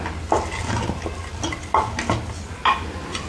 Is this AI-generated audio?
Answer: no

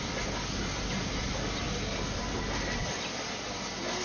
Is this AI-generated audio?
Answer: no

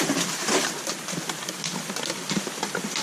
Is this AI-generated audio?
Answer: no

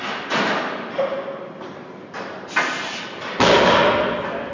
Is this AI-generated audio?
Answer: no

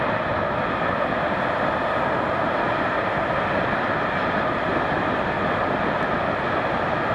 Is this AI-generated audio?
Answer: no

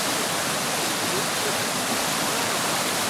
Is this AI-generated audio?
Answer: no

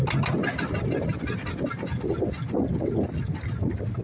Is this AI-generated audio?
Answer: no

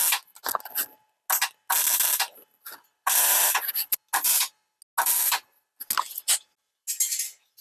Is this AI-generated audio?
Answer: no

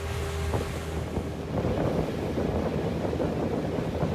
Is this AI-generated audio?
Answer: no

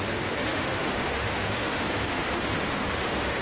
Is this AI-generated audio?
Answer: yes